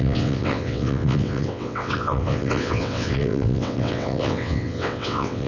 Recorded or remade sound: remade